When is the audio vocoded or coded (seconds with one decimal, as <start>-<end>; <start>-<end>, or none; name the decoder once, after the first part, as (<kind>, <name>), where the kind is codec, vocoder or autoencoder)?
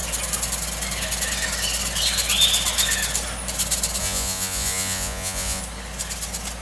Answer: 4.0-5.6 (vocoder, Vocos)